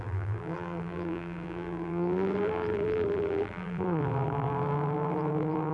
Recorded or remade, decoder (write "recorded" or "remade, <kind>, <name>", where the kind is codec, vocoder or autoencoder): remade, vocoder, BigVGAN v2